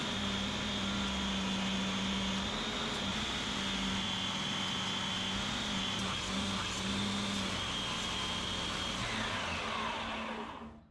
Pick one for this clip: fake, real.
real